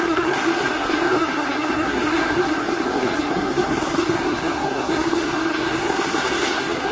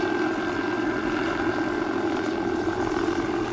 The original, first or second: second